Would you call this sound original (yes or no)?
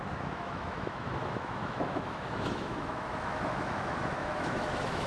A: no